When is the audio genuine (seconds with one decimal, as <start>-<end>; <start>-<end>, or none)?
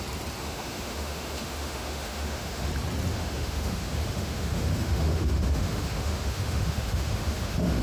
0.0-0.4; 2.7-3.1